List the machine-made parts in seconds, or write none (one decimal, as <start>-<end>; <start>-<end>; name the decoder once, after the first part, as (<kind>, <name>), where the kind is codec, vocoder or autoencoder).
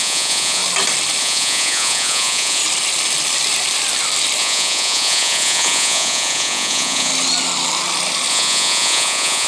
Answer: 0.0-0.6 (vocoder, Vocos); 1.2-2.6; 4.4-7.1; 8.3-9.5